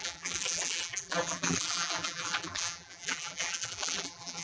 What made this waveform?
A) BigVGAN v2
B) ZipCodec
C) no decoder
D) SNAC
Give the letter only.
A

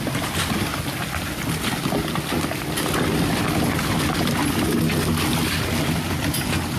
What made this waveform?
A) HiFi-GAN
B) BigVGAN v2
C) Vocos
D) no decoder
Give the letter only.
D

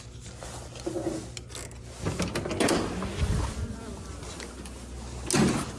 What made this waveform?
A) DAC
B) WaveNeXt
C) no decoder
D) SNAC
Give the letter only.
C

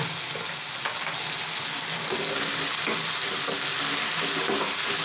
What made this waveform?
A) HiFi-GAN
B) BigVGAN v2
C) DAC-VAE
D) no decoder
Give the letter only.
D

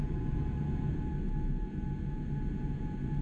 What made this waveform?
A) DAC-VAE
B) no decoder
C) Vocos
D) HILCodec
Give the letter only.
C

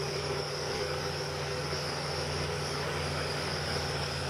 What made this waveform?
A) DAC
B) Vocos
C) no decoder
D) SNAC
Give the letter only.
A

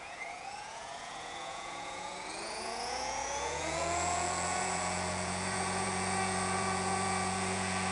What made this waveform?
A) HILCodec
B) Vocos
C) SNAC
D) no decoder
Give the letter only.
B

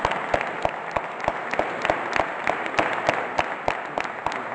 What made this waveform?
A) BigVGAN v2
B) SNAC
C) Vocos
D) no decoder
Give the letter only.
D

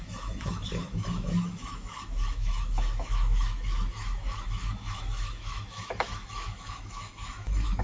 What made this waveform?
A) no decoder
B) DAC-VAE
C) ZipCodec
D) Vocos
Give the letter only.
B